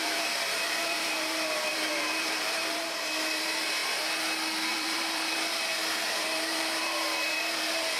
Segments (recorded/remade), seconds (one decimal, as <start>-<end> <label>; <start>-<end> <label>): 0.0-3.8 remade; 3.8-4.7 recorded; 4.7-8.0 remade